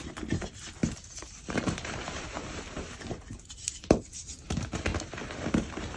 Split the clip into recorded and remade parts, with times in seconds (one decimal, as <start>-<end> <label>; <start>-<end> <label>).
0.0-4.9 remade; 4.9-5.5 recorded; 5.5-6.0 remade